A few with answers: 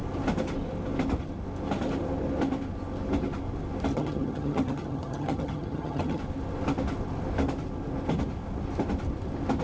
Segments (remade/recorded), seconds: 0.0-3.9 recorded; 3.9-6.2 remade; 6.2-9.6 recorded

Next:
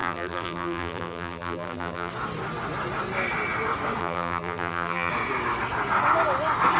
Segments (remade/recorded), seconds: 0.0-2.1 remade; 2.1-4.0 recorded; 4.0-5.1 remade; 5.1-6.8 recorded

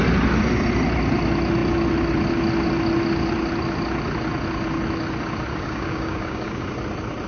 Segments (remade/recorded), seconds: 0.0-5.5 recorded; 5.5-6.7 remade; 6.7-7.3 recorded

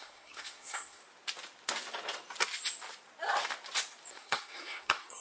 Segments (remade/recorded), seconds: 0.0-1.0 remade; 1.0-4.1 recorded; 4.1-5.2 remade

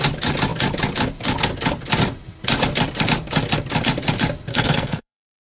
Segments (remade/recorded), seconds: 0.0-4.5 recorded; 4.5-5.4 remade

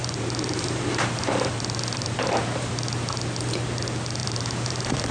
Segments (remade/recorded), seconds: 0.0-3.1 remade; 3.1-4.2 recorded; 4.2-5.1 remade

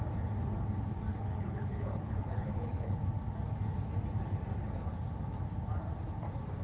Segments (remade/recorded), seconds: 0.0-1.1 recorded; 1.1-3.0 remade; 3.0-6.6 recorded

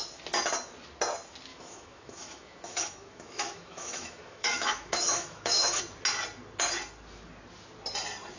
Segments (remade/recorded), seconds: 0.0-1.5 recorded; 1.5-5.8 remade; 5.8-8.4 recorded